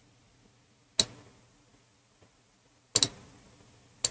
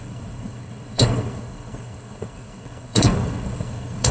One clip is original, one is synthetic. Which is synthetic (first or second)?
second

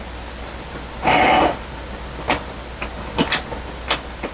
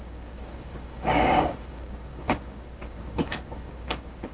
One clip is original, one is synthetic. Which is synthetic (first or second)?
second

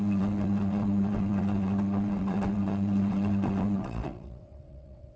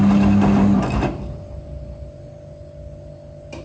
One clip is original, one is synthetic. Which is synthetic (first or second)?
first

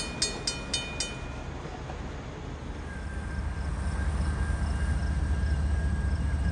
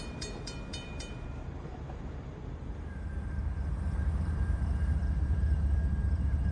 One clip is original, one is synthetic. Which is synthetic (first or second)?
second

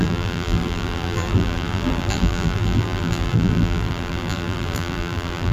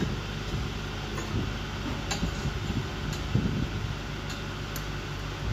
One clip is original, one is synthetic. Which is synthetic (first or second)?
first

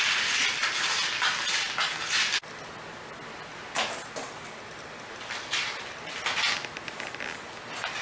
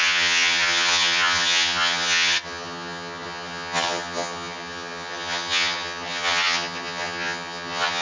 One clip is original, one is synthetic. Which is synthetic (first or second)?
second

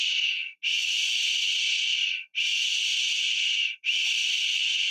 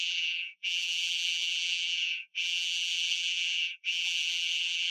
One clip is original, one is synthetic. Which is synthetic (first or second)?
second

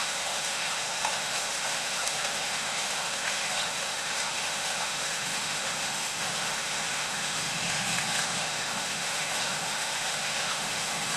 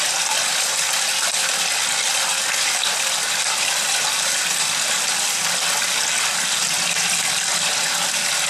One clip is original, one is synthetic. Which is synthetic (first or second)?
first